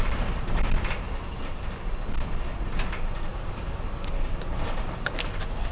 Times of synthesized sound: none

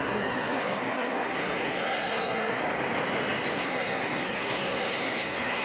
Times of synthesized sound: 0.0-2.6 (codec, SNAC); 3.5-5.6

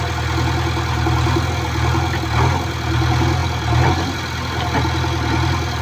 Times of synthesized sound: none

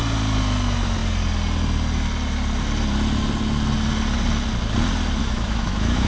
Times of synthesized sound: 5.2-6.1 (autoencoder, DAC-VAE)

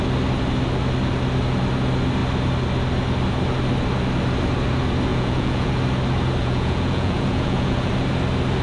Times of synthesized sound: 5.1-5.7 (vocoder, Vocos); 6.4-7.9

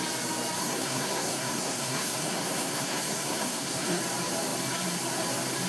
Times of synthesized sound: 0.6-4.0 (codec, SNAC)

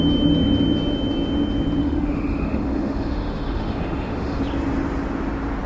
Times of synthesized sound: 1.8-4.4 (autoencoder, DAC-VAE)